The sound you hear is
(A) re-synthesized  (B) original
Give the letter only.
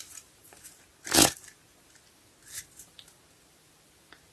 B